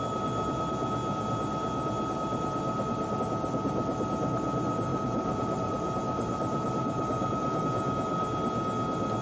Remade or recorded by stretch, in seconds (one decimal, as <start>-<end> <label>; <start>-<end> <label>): 0.0-4.9 recorded; 4.9-7.6 remade; 7.6-9.2 recorded